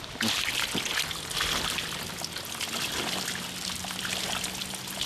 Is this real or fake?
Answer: real